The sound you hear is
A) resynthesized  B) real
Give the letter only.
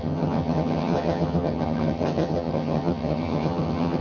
A